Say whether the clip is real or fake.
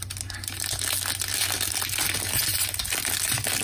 real